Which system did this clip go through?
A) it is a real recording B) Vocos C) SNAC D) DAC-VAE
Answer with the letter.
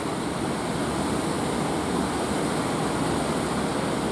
A